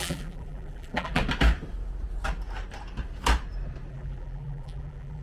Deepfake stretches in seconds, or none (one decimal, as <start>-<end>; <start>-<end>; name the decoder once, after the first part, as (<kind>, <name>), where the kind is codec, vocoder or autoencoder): 0.0-1.2 (vocoder, BigVGAN v2); 3.9-5.2